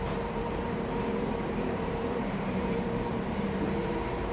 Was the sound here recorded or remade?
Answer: remade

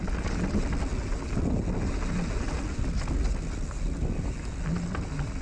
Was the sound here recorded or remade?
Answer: recorded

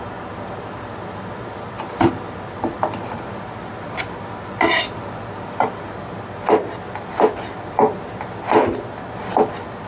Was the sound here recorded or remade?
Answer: recorded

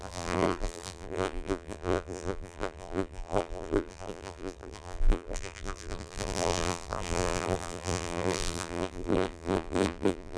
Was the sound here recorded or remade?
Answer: remade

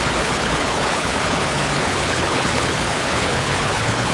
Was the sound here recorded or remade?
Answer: remade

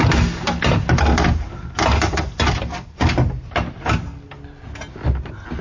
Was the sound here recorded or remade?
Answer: recorded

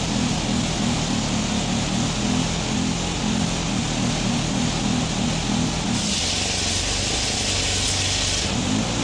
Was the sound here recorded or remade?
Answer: recorded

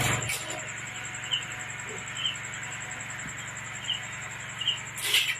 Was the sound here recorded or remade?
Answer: recorded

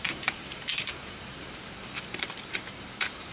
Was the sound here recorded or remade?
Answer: remade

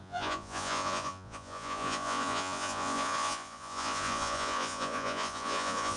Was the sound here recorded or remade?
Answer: remade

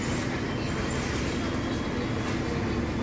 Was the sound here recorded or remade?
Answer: recorded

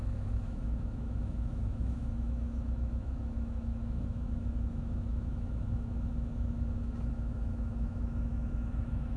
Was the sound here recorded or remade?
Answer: remade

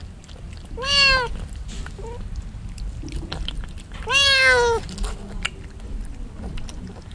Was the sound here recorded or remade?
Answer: recorded